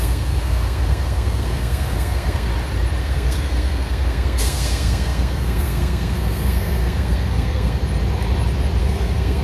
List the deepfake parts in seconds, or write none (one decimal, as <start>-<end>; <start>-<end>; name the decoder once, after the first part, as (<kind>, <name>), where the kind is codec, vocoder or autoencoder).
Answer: 0.0-2.5 (codec, SNAC); 3.0-7.8; 8.8-9.4